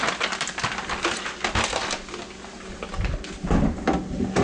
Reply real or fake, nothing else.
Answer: real